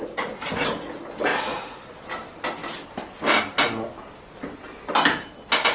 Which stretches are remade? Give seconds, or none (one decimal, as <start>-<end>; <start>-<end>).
0.0-0.6; 1.3-1.9